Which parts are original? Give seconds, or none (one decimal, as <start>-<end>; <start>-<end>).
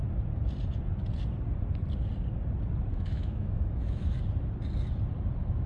0.0-2.9; 4.2-5.7